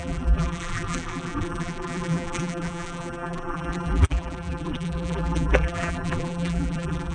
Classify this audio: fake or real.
fake